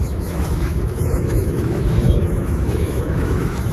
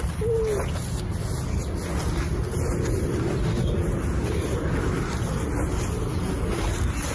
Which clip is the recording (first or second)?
second